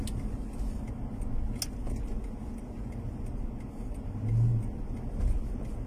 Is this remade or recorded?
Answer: recorded